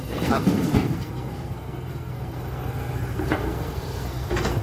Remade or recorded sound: remade